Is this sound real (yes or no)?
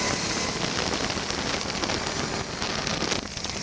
yes